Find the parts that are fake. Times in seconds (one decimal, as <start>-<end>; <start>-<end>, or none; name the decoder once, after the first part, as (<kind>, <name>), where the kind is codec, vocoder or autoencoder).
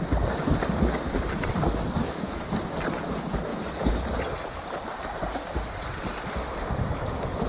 2.0-2.5 (autoencoder, DAC-VAE)